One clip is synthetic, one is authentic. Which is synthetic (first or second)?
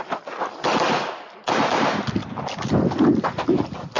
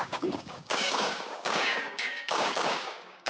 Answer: second